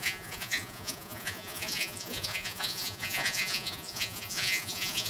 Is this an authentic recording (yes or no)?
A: no